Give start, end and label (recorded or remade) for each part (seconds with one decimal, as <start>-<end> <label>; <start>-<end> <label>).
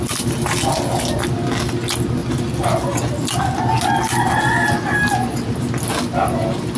0.0-6.8 recorded